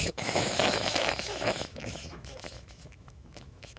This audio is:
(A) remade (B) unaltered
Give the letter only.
A